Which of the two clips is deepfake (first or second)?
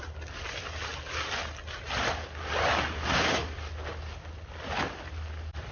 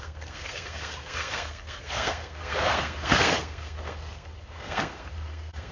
second